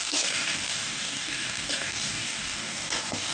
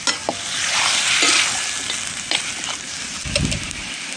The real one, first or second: second